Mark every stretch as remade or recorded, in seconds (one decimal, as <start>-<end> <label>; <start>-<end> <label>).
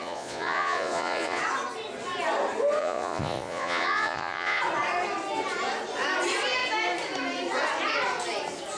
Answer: 0.0-1.4 remade; 1.4-2.8 recorded; 2.8-4.6 remade; 4.6-8.8 recorded